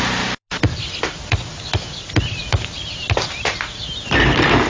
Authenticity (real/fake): real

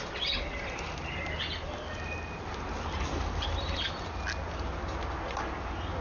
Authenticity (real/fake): real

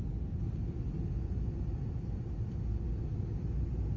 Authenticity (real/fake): real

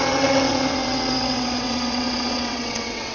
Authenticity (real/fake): fake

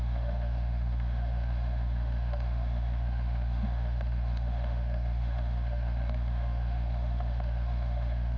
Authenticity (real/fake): fake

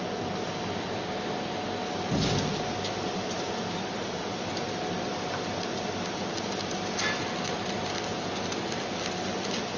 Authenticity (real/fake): real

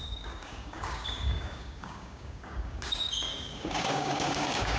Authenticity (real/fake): fake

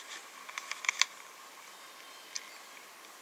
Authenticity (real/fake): real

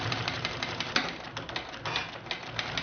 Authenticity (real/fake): real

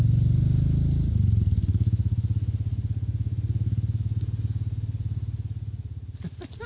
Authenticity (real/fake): real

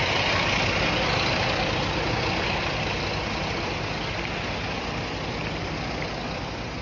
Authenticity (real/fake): real